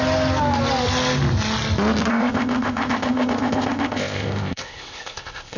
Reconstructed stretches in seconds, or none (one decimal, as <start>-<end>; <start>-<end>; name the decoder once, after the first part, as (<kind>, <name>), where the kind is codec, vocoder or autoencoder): 2.1-5.6 (codec, ZipCodec)